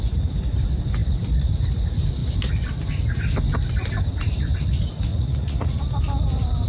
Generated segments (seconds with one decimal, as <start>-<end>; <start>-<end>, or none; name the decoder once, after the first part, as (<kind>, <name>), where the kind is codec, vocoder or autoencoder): 5.1-5.8 (vocoder, Vocos)